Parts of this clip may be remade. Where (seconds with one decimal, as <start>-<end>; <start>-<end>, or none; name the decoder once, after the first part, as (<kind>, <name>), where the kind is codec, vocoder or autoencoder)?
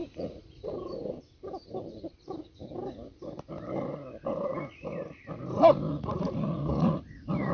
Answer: 0.0-0.7 (vocoder, Vocos); 5.9-7.5